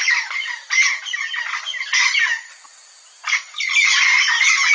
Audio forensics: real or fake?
real